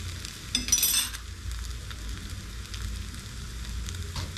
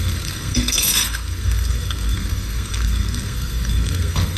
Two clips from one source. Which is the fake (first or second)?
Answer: second